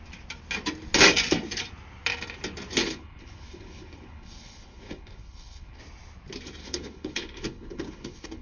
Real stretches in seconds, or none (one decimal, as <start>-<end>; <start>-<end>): 0.0-2.8; 5.8-6.6